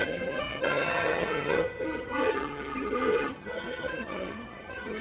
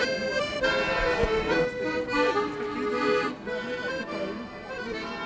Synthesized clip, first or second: first